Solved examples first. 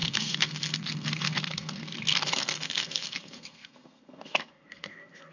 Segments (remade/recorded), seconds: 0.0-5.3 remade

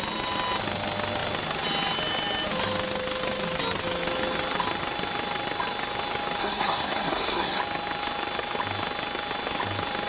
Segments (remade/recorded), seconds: 0.0-6.4 recorded; 6.4-7.6 remade; 7.6-10.1 recorded